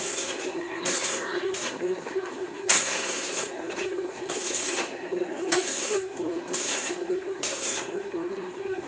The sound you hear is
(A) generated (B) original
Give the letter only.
A